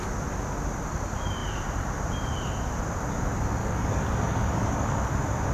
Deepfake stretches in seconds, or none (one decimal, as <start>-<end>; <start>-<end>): 3.6-5.1